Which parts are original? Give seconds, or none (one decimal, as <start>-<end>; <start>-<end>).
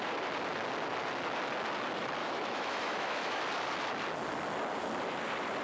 0.0-2.2; 3.4-5.6